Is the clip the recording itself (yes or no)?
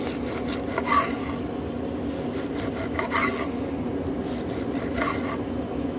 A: yes